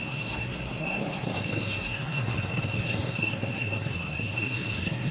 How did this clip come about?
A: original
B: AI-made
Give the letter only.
B